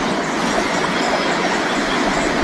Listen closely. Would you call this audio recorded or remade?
remade